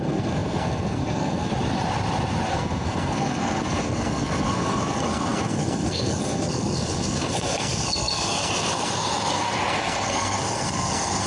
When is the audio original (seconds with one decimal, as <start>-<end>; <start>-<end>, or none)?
1.5-2.5